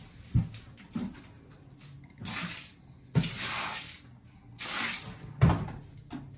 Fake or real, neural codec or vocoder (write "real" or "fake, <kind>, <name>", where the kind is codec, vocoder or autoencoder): real